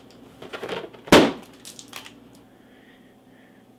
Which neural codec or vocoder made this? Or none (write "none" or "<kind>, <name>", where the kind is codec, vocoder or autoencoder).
none